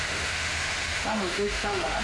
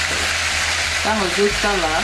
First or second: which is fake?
first